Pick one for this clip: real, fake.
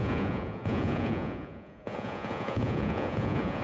fake